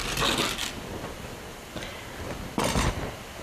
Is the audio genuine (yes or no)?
yes